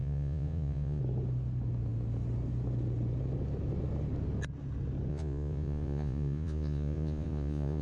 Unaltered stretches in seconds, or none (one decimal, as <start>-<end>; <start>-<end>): 1.0-5.1